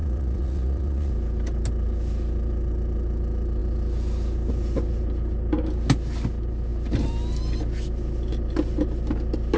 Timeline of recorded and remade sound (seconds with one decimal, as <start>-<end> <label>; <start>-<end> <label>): 0.0-1.1 remade; 1.1-9.6 recorded